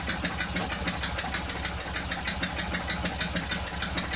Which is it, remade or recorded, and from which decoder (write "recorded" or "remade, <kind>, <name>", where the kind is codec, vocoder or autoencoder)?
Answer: recorded